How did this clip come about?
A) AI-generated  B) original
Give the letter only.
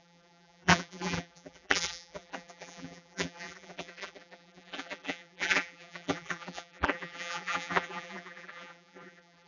A